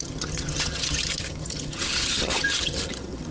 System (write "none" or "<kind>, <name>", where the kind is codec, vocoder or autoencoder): vocoder, HiFi-GAN